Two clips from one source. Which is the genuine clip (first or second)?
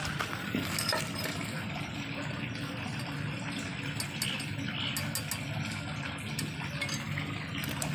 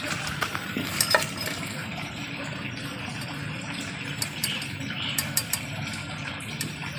first